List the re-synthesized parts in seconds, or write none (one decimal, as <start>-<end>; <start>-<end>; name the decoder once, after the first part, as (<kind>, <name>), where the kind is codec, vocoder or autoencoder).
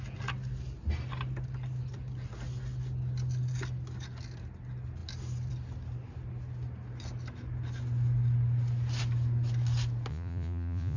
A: 10.1-11.0 (vocoder, Vocos)